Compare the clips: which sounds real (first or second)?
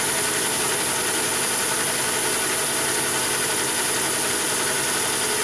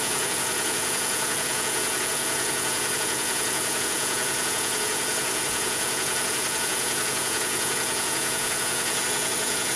first